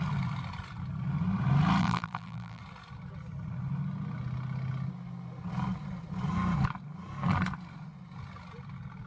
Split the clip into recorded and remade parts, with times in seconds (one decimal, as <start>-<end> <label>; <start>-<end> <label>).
0.0-1.8 recorded; 1.8-2.6 remade; 2.6-9.1 recorded

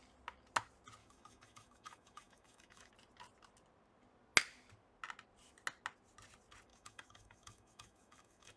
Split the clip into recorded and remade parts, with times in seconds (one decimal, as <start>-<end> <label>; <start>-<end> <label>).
0.0-1.0 recorded; 1.0-2.9 remade; 2.9-6.7 recorded; 6.7-8.6 remade

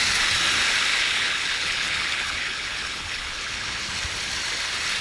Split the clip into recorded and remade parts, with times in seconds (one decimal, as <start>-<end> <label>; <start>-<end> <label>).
0.0-0.9 recorded; 0.9-3.9 remade; 3.9-5.0 recorded